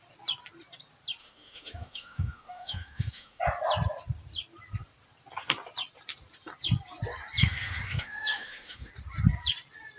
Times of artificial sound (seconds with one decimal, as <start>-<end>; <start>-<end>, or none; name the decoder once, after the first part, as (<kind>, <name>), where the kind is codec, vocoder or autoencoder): 1.2-3.4 (autoencoder, DAC-VAE); 7.4-8.9